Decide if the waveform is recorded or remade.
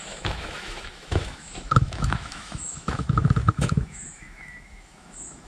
remade